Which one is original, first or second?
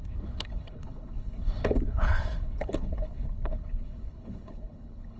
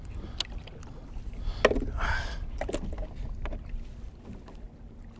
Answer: second